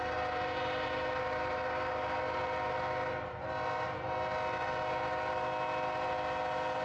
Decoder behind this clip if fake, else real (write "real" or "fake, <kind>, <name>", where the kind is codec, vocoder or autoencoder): real